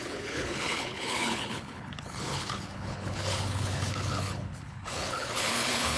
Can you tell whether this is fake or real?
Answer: fake